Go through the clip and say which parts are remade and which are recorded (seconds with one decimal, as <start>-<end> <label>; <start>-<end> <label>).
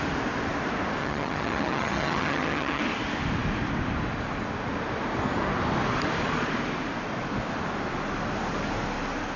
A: 0.0-1.0 recorded; 1.0-2.8 remade; 2.8-9.4 recorded